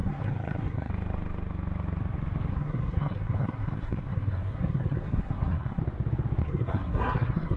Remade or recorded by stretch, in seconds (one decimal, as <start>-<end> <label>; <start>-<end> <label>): 0.0-0.9 remade; 0.9-2.5 recorded; 2.5-5.8 remade; 5.8-6.4 recorded; 6.4-7.6 remade